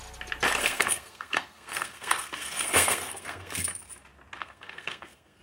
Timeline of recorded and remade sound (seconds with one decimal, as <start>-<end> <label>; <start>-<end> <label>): 0.0-0.6 recorded; 0.6-3.8 remade; 3.8-4.4 recorded; 4.4-5.4 remade